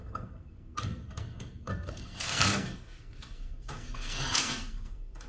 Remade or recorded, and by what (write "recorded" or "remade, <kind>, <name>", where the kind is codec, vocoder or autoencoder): remade, codec, SNAC